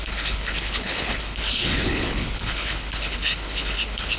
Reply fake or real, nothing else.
fake